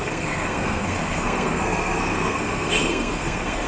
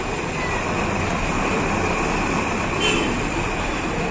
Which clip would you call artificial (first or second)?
first